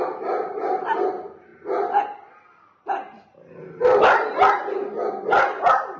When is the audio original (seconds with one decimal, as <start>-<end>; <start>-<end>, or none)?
0.0-6.0